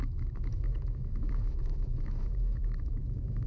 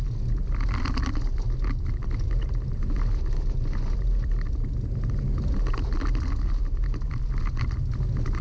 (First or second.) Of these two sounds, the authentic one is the second